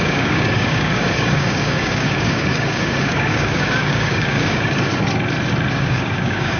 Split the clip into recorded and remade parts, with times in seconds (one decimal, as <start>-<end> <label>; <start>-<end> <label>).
0.0-4.9 remade; 4.9-5.7 recorded; 5.7-6.6 remade

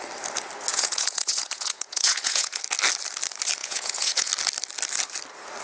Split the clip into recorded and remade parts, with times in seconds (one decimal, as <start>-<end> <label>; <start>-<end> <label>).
0.0-0.7 recorded; 0.7-2.6 remade; 2.6-3.6 recorded; 3.6-4.3 remade; 4.3-5.6 recorded

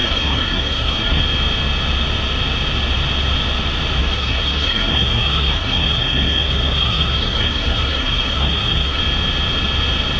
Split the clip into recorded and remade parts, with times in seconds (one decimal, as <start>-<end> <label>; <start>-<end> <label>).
0.0-1.2 remade; 1.2-4.0 recorded; 4.0-9.0 remade; 9.0-10.2 recorded

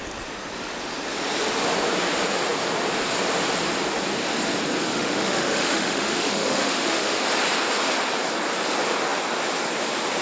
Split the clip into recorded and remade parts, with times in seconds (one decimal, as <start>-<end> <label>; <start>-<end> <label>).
0.0-4.9 recorded; 4.9-7.2 remade; 7.2-10.2 recorded

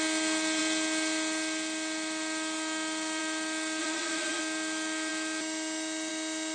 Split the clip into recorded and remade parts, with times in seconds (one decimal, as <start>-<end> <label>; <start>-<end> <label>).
0.0-3.8 recorded; 3.8-4.4 remade; 4.4-6.5 recorded

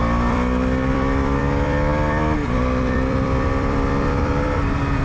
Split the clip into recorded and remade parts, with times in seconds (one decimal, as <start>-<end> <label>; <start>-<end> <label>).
0.0-5.0 remade